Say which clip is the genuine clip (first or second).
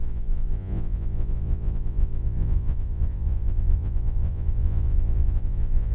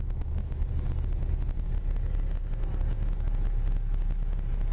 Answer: second